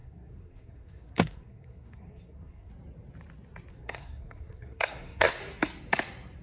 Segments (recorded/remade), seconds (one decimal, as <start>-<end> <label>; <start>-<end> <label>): 0.0-2.7 remade; 2.7-3.7 recorded; 3.7-5.4 remade; 5.4-6.4 recorded